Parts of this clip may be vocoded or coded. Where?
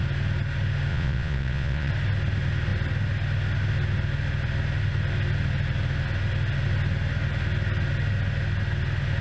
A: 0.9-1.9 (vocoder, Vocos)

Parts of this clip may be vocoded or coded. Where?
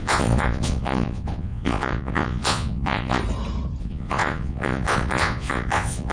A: 0.0-3.2 (vocoder, Vocos); 3.8-6.1